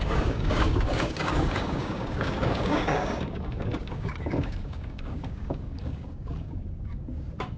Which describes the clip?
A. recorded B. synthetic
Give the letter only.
B